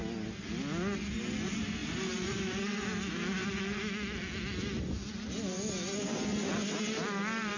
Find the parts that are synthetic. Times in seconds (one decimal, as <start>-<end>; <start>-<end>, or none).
1.8-2.6